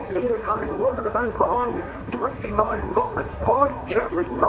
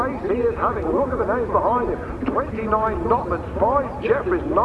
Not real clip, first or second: first